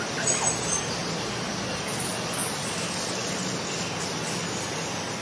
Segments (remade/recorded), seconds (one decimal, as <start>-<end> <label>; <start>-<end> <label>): 0.0-2.4 recorded; 2.4-3.4 remade; 3.4-5.2 recorded